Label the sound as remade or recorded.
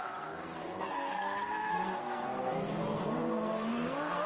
remade